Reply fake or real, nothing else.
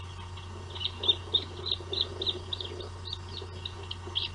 real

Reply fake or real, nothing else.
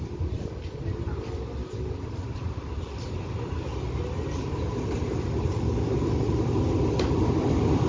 real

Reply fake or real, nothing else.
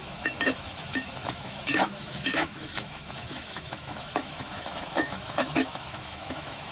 fake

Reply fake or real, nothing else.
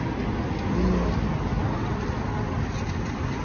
real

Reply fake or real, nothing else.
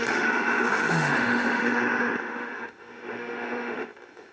fake